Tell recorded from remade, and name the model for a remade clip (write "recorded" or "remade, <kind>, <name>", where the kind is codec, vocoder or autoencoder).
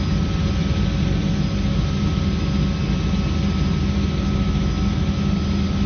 recorded